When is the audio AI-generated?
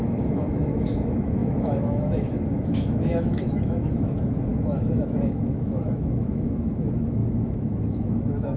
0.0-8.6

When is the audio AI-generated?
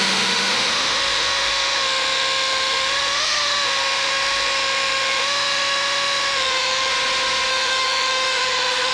0.0-6.9; 7.5-8.9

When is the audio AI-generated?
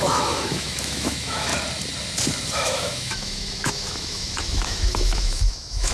0.0-1.5; 2.5-5.9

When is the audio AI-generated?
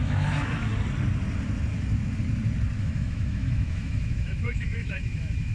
0.0-0.7; 2.8-5.5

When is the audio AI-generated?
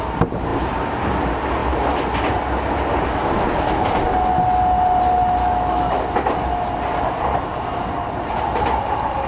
5.4-6.0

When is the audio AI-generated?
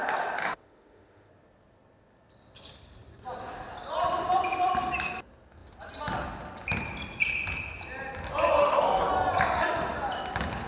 0.4-1.3; 8.6-9.1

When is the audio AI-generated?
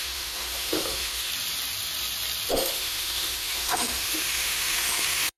0.0-1.3; 2.5-5.4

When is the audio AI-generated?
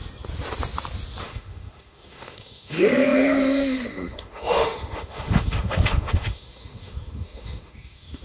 1.2-8.2